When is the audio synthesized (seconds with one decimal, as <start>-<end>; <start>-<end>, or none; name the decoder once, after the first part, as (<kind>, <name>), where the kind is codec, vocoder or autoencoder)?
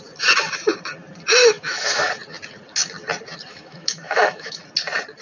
1.4-2.1 (autoencoder, DAC-VAE); 3.5-4.6